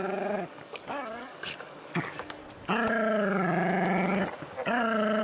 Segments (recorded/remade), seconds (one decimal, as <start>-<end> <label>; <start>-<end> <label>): 0.0-2.4 remade; 2.4-5.2 recorded